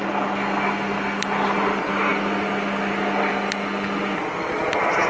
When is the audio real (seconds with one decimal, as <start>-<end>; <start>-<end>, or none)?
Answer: 0.0-5.1